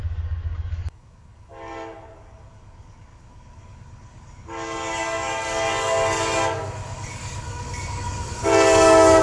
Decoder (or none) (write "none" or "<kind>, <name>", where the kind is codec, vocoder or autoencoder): codec, DAC